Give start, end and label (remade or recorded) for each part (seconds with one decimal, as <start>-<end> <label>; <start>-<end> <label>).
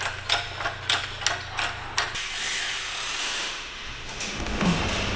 0.0-3.2 recorded; 3.2-4.8 remade; 4.8-5.2 recorded